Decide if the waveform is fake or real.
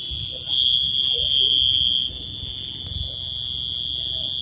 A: real